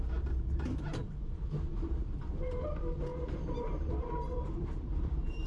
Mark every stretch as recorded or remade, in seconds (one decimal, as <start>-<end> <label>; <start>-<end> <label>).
0.0-5.5 remade

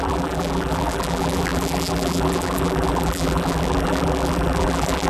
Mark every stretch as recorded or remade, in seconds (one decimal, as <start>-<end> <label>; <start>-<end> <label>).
0.0-5.1 remade